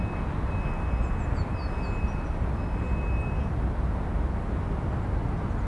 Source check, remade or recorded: recorded